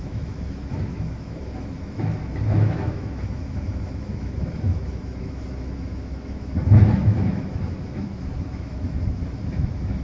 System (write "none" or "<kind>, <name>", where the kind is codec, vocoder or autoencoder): autoencoder, DAC-VAE